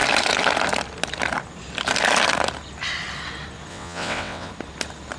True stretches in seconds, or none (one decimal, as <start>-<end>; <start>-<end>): 0.0-3.7; 4.5-5.2